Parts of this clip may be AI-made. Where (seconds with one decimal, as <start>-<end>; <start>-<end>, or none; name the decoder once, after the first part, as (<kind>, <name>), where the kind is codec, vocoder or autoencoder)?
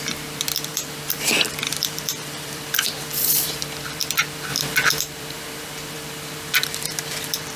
0.0-7.6 (vocoder, BigVGAN v2)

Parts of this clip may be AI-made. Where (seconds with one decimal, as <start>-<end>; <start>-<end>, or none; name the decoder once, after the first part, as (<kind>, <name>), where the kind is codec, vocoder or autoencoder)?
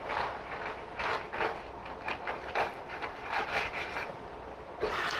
1.8-5.2 (vocoder, BigVGAN v2)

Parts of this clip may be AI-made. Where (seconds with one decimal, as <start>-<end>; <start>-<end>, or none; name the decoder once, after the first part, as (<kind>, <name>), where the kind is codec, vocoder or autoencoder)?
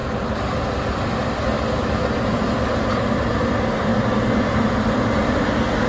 none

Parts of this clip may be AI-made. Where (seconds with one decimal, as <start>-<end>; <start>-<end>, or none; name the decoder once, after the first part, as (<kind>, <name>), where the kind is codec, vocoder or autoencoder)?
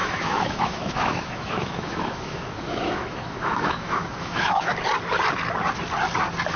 0.0-4.7 (autoencoder, DAC-VAE)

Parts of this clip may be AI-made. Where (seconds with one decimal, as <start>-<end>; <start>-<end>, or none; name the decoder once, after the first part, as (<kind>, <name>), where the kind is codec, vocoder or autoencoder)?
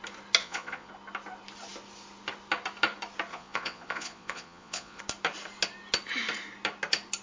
0.4-0.9 (vocoder, Vocos); 3.3-5.0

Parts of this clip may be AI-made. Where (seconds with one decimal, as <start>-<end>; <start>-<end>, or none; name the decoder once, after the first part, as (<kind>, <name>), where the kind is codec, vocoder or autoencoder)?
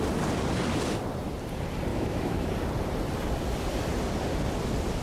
1.9-2.5 (autoencoder, DAC-VAE)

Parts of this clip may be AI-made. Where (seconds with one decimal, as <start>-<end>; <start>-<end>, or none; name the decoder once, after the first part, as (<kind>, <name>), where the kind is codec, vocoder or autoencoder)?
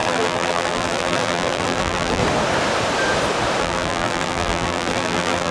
0.0-2.2 (vocoder, BigVGAN v2); 3.6-5.5